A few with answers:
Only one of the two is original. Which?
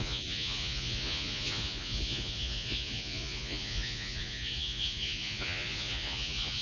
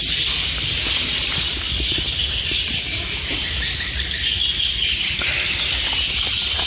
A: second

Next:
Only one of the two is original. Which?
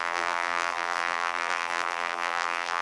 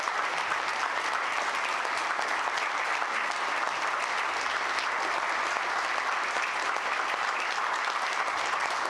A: second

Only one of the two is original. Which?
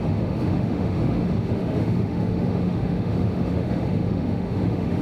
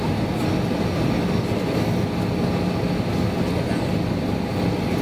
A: second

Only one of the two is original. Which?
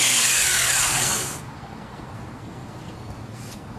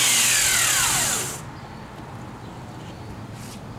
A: second